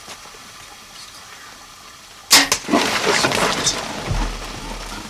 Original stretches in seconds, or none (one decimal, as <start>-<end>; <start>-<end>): 0.0-5.1